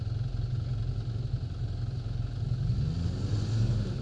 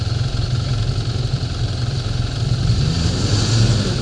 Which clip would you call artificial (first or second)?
second